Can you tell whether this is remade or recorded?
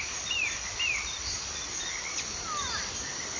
recorded